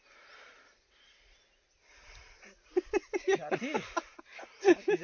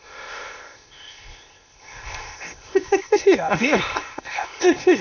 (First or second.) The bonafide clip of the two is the first